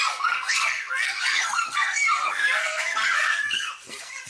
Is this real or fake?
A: fake